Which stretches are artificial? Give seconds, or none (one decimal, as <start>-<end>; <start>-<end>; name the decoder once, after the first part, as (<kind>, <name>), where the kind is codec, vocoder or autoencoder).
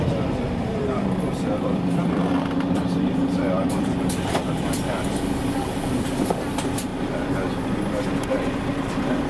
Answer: 0.0-6.9 (vocoder, BigVGAN v2); 8.3-9.3